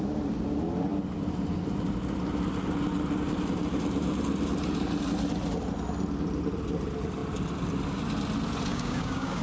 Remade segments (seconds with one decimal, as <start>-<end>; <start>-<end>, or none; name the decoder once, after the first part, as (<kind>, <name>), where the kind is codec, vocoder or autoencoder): 8.7-9.4 (codec, DAC)